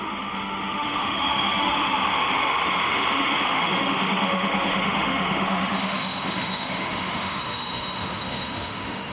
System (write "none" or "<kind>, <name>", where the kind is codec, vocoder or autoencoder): autoencoder, DAC-VAE